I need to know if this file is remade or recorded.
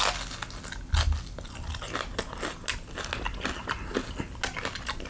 recorded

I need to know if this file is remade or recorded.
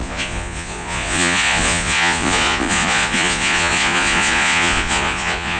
remade